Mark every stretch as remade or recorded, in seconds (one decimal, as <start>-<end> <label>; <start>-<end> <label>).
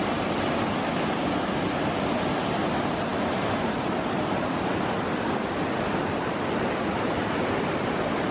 0.0-8.3 recorded